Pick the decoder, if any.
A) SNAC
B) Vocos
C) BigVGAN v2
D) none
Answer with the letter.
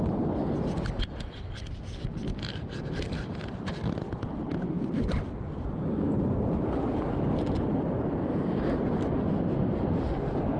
D